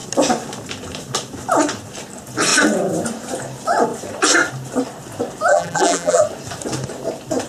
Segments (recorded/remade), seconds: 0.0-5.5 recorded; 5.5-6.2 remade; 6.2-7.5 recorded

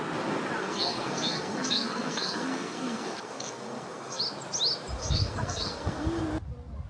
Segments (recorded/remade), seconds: 0.0-0.6 recorded; 0.6-4.2 remade; 4.2-5.0 recorded; 5.0-6.2 remade; 6.2-6.9 recorded

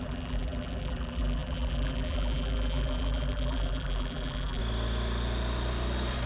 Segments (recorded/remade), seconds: 0.0-4.6 remade; 4.6-6.3 recorded